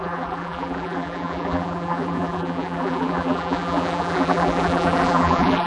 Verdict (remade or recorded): remade